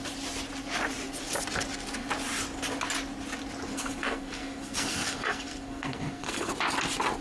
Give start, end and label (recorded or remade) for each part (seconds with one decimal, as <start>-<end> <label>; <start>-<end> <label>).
0.0-3.7 recorded; 3.7-6.5 remade; 6.5-7.2 recorded